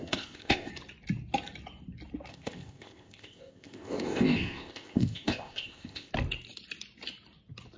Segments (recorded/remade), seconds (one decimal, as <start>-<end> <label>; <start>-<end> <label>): 0.0-0.7 remade; 0.7-2.3 recorded; 2.3-6.1 remade; 6.1-7.8 recorded